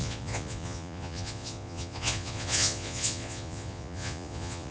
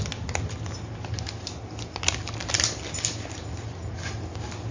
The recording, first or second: second